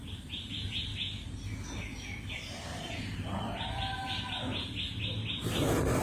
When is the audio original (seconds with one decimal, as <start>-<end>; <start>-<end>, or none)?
0.9-2.9; 5.2-6.0

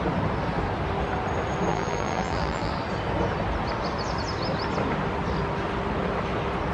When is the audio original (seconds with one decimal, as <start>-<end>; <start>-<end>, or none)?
0.0-1.7; 2.7-6.7

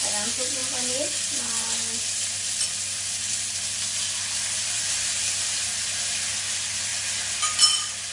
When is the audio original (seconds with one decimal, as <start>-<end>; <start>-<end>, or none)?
0.0-0.6; 5.2-8.1

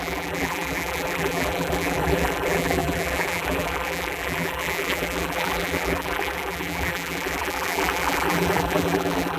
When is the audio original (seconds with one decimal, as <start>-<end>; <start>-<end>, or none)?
none